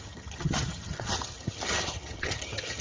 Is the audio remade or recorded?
remade